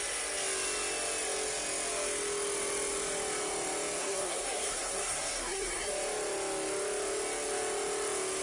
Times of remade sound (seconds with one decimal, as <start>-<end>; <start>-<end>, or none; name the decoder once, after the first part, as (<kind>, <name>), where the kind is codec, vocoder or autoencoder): 4.0-5.9 (codec, SNAC)